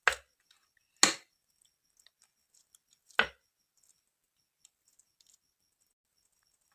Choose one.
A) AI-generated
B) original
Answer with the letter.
B